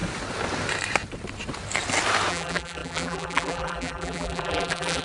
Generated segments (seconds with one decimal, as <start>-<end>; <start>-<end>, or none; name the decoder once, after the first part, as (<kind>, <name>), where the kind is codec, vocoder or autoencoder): 2.3-5.0 (vocoder, BigVGAN v2)